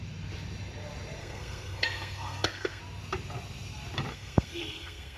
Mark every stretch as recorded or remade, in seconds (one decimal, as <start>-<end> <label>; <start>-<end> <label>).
0.0-1.2 recorded; 1.2-2.8 remade; 2.8-4.1 recorded; 4.1-5.2 remade